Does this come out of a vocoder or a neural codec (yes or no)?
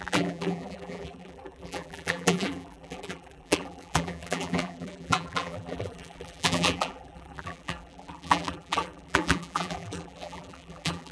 yes